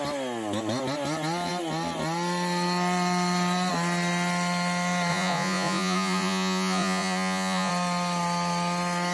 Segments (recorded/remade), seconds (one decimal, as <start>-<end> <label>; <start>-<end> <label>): 0.0-5.1 recorded; 5.1-7.7 remade; 7.7-9.1 recorded